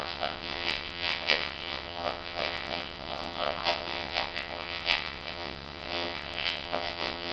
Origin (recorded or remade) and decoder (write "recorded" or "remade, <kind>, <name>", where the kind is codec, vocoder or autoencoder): remade, vocoder, WaveNeXt